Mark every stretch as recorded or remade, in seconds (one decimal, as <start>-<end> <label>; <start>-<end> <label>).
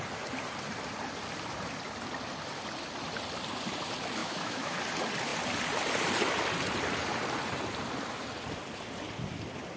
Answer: 0.0-4.2 recorded; 4.2-4.8 remade; 4.8-9.8 recorded